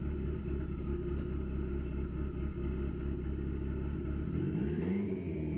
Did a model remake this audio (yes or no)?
no